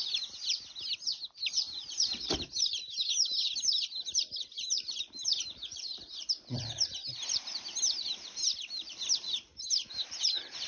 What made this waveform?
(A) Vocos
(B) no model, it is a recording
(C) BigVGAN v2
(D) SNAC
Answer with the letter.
C